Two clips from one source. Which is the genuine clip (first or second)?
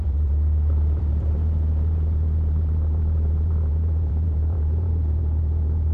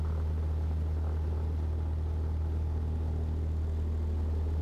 second